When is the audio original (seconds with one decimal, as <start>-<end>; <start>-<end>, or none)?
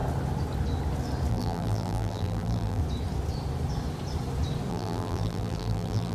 0.0-1.3; 2.8-4.7